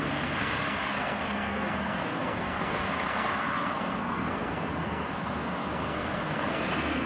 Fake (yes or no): yes